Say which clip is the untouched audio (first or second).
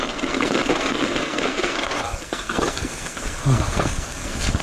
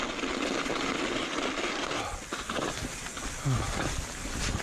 second